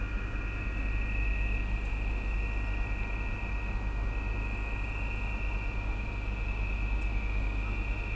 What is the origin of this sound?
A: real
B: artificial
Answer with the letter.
A